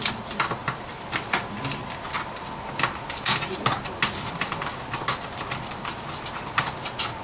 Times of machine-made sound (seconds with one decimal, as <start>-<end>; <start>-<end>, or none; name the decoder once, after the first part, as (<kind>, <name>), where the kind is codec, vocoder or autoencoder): none